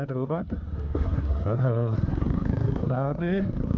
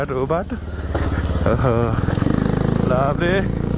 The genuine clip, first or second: second